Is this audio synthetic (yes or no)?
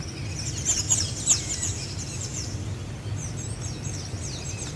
no